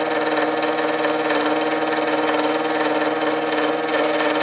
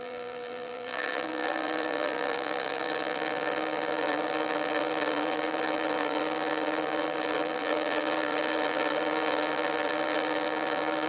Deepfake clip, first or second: second